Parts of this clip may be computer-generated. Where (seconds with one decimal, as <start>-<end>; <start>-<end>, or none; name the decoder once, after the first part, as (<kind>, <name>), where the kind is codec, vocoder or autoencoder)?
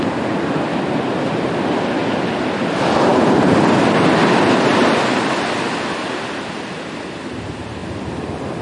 0.0-7.8 (vocoder, BigVGAN v2)